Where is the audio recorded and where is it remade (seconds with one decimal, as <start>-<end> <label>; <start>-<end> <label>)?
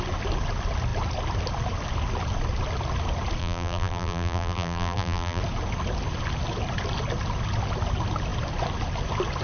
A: 0.0-3.4 recorded; 3.4-5.4 remade; 5.4-9.4 recorded